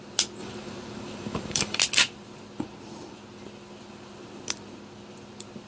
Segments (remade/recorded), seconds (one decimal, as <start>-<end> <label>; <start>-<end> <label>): 0.0-0.4 recorded; 0.4-1.8 remade; 1.8-5.7 recorded